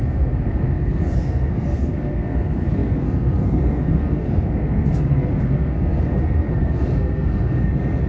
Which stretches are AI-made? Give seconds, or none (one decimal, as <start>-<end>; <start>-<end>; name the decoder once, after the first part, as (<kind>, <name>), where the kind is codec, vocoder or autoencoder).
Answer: 0.0-8.1 (codec, SNAC)